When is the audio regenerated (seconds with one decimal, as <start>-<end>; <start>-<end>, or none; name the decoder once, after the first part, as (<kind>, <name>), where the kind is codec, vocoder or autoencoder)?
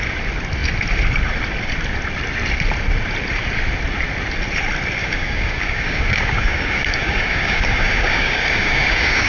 5.0-9.3 (codec, DAC)